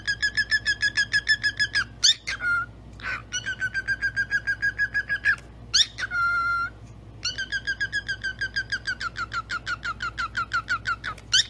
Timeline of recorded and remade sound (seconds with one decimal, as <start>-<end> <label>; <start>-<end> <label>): 0.0-11.5 recorded